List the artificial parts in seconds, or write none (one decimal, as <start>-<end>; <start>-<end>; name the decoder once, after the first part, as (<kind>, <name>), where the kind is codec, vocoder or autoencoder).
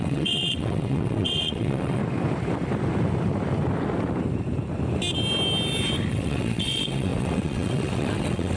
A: 0.0-2.0 (vocoder, WaveNeXt); 6.1-8.6